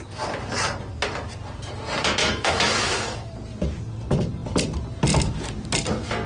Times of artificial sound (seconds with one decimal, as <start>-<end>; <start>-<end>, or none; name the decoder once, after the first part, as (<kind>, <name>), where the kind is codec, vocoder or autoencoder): 2.2-3.3 (autoencoder, DAC-VAE)